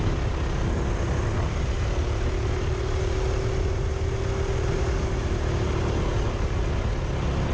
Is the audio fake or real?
real